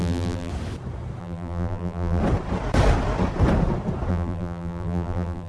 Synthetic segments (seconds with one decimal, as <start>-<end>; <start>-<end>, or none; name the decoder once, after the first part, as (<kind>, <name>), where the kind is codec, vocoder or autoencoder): 0.0-0.5 (vocoder, BigVGAN v2); 1.2-2.2; 4.1-5.5